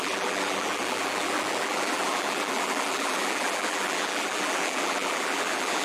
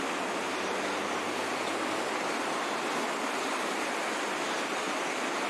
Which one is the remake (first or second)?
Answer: first